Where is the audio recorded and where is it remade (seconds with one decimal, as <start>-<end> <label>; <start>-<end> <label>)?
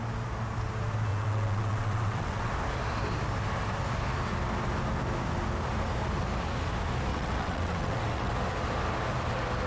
0.0-1.1 recorded; 1.1-2.5 remade; 2.5-7.1 recorded; 7.1-8.3 remade; 8.3-9.7 recorded